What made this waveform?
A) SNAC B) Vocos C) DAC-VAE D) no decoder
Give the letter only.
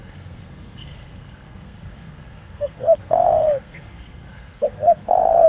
A